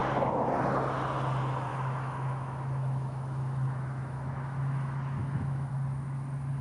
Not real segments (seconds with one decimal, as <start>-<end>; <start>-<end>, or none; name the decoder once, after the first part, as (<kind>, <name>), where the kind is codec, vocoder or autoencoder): 1.7-5.7 (autoencoder, DAC-VAE)